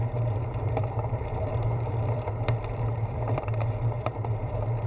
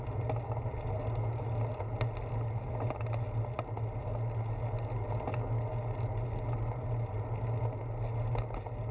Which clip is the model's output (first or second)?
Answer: first